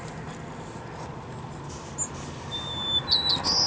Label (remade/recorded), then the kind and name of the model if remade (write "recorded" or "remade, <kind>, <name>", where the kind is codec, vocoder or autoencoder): recorded